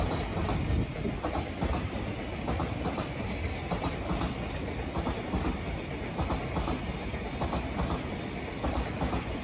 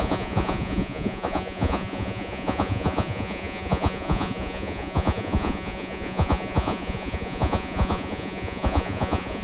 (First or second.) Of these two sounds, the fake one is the second